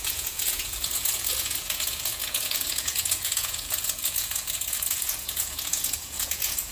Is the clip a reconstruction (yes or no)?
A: yes